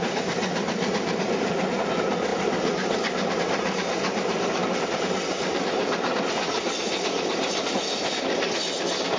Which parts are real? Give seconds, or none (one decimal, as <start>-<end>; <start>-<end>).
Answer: 0.0-9.2